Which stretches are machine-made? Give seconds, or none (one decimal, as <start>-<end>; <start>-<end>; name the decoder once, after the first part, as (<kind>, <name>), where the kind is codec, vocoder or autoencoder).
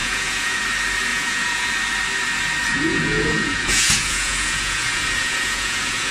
0.0-0.6 (vocoder, Vocos); 1.1-1.7; 2.7-6.1